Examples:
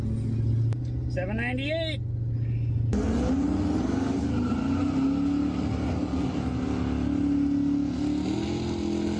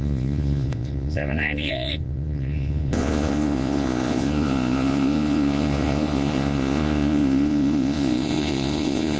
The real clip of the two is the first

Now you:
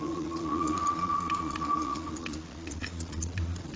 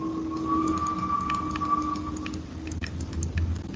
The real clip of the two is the second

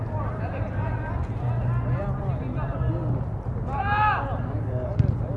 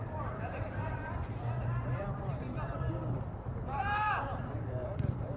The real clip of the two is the first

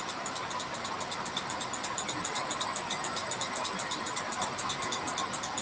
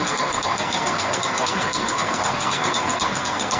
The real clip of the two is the first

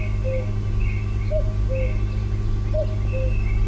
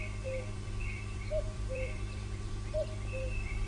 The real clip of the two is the first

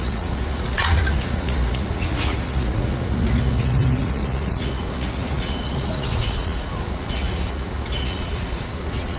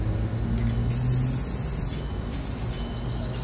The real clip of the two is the second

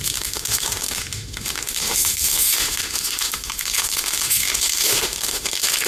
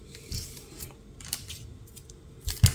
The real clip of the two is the second